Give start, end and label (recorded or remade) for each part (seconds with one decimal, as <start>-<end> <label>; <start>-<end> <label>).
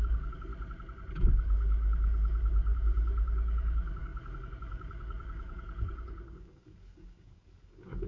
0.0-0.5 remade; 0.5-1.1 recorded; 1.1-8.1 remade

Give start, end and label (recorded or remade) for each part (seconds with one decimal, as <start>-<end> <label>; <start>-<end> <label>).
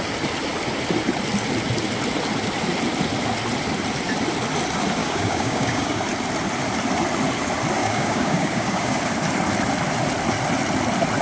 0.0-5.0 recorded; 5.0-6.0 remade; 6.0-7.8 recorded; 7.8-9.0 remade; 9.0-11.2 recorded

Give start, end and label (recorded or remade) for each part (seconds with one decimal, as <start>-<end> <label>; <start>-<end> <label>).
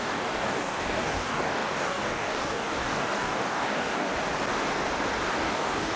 0.0-4.1 remade; 4.1-5.3 recorded; 5.3-6.0 remade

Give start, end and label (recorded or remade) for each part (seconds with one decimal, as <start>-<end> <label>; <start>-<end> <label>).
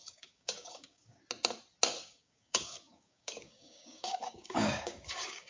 0.0-1.2 remade; 1.2-2.0 recorded; 2.0-5.5 remade